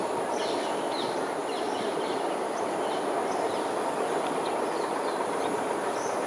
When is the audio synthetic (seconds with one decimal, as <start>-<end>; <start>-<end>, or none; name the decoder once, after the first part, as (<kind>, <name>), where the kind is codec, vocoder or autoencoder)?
none